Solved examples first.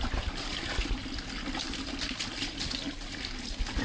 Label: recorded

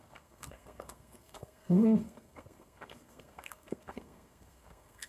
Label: remade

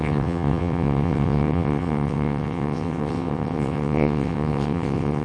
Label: remade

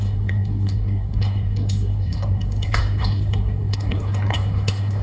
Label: remade